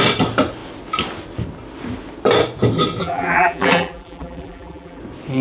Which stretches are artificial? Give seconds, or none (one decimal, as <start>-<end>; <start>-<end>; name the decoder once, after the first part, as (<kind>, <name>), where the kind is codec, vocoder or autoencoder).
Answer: 3.0-5.0 (vocoder, BigVGAN v2)